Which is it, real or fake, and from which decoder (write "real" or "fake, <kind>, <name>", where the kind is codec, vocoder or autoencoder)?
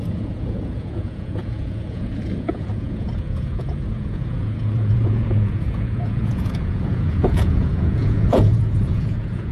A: fake, vocoder, Vocos